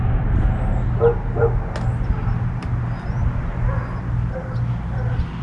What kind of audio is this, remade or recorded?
recorded